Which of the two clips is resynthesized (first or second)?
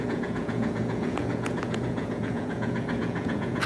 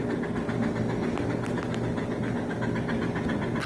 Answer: first